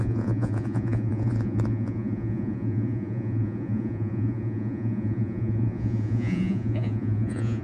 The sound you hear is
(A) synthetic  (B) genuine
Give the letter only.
A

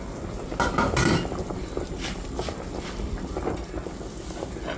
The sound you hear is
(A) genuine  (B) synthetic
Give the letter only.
A